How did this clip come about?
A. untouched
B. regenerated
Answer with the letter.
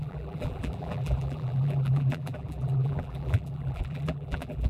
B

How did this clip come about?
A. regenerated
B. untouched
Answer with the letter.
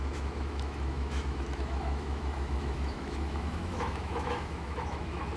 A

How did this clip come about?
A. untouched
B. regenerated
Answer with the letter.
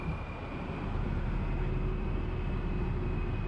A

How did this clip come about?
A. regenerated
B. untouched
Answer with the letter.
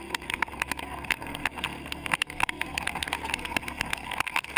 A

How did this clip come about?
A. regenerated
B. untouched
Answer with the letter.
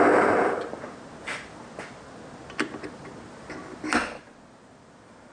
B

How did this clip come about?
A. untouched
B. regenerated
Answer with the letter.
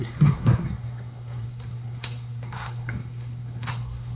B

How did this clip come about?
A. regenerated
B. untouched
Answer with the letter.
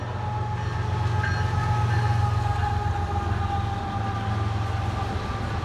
B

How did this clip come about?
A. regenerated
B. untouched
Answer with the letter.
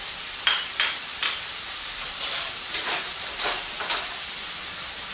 A